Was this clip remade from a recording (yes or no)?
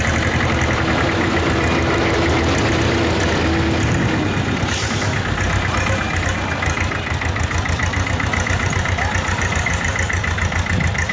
no